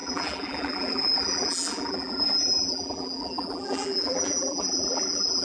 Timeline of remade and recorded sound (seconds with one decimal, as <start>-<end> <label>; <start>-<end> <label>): 0.0-5.4 remade